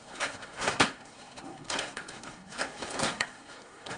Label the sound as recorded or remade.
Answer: remade